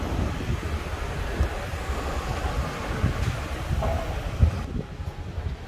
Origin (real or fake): real